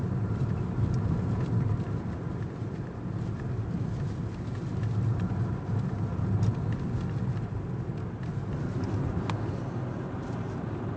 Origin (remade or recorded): recorded